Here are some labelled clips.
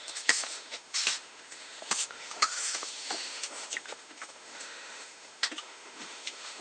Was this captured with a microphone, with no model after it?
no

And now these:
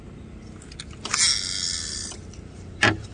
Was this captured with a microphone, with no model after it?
yes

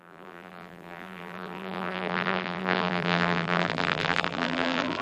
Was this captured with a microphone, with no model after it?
no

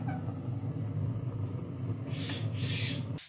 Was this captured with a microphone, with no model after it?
yes